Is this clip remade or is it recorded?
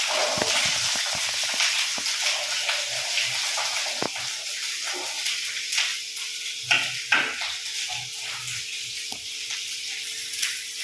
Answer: recorded